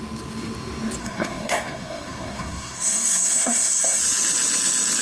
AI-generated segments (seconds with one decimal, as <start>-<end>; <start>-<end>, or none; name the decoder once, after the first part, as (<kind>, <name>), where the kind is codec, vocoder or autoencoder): 1.0-4.0 (codec, SNAC)